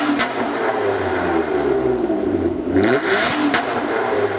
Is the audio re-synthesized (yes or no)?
yes